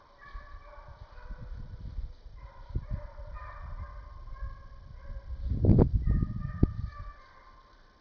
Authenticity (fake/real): real